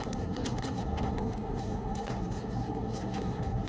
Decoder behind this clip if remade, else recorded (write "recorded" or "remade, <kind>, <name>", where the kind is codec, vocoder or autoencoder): remade, codec, SNAC